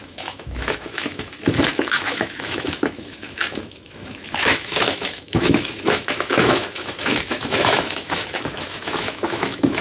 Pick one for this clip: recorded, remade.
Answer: remade